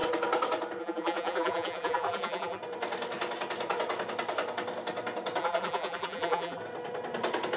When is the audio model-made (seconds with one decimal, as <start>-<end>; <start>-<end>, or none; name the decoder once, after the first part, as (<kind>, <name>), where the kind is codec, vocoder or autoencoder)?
0.8-2.6 (vocoder, BigVGAN v2); 5.4-6.6